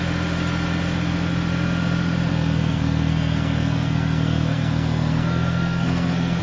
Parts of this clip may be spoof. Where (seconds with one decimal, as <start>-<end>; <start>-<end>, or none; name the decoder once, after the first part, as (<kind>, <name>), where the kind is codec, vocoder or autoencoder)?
2.3-6.4 (codec, SNAC)